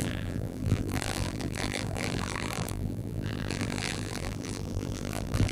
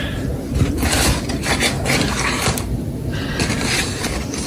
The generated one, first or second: first